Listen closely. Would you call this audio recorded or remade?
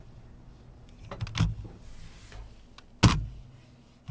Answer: recorded